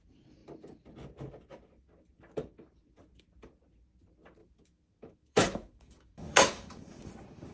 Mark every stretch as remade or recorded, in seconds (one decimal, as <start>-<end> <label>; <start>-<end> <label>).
0.0-4.4 recorded; 4.4-7.0 remade; 7.0-7.5 recorded